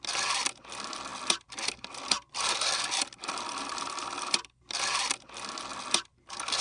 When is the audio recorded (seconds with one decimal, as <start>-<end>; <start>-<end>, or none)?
0.0-1.1; 4.8-5.7